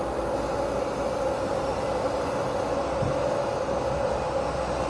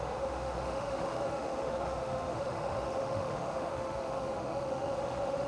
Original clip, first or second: first